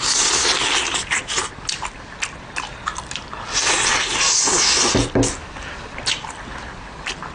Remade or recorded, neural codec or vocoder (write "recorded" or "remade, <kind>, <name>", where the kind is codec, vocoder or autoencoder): recorded